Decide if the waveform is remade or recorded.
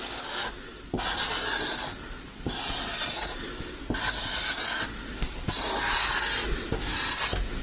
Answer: recorded